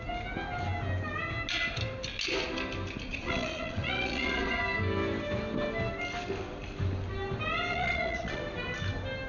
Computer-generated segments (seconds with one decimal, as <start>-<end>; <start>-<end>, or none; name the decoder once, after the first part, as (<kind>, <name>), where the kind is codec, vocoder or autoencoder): 3.1-4.6 (vocoder, Vocos); 7.7-8.4